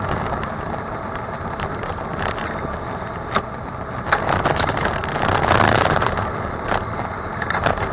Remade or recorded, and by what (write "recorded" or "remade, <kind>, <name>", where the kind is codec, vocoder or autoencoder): recorded